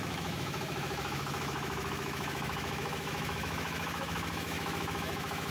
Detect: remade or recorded remade